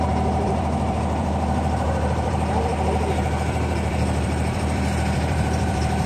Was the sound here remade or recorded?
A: remade